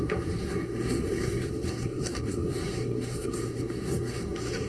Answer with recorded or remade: remade